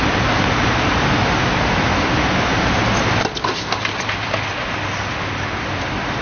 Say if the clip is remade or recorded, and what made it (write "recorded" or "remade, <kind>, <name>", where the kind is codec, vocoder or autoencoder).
recorded